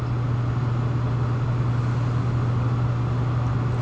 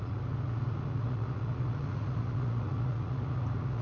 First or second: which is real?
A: first